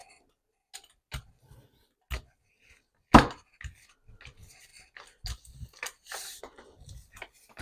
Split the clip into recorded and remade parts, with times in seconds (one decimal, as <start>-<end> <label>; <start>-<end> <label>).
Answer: 0.0-7.6 recorded